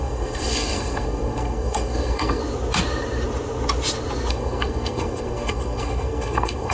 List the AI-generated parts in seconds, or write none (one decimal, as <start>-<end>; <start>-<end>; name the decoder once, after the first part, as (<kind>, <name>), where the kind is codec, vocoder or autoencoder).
0.0-2.4 (codec, SNAC); 4.3-6.7